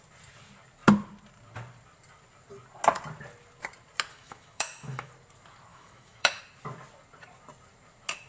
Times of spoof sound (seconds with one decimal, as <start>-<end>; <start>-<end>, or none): 4.1-5.1; 5.7-6.4